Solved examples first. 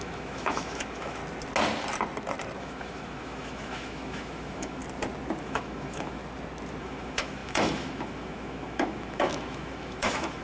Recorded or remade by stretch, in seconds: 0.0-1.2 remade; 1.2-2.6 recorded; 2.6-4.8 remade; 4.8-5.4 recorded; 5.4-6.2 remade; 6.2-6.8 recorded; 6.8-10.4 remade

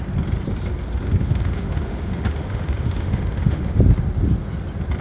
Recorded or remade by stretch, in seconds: 0.0-1.2 recorded; 1.2-3.8 remade; 3.8-5.0 recorded

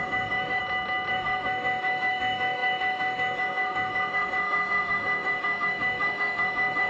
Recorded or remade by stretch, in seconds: 0.0-0.6 remade; 0.6-1.1 recorded; 1.1-6.9 remade

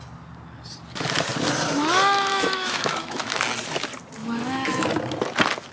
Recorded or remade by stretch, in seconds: 0.0-2.3 recorded; 2.3-3.3 remade; 3.3-4.2 recorded; 4.2-4.9 remade; 4.9-5.7 recorded

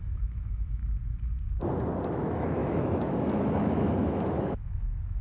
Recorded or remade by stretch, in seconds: 0.0-0.8 remade; 0.8-2.1 recorded; 2.1-5.2 remade

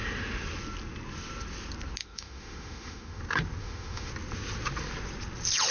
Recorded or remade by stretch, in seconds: 0.0-2.0 recorded; 2.0-3.2 remade; 3.2-3.6 recorded; 3.6-4.1 remade; 4.1-5.7 recorded

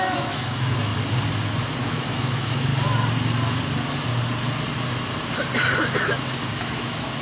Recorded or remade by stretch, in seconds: 0.0-0.9 remade; 0.9-1.8 recorded; 1.8-2.7 remade; 2.7-6.6 recorded; 6.6-7.2 remade

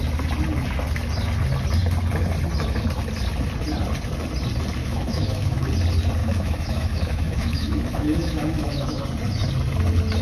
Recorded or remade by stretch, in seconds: 0.0-4.8 recorded; 4.8-5.7 remade; 5.7-6.2 recorded; 6.2-9.0 remade; 9.0-10.2 recorded